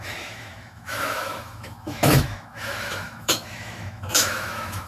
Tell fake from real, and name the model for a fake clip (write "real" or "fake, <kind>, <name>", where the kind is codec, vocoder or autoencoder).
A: fake, autoencoder, DAC-VAE